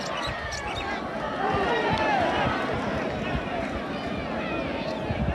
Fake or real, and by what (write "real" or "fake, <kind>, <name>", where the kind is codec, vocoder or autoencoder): real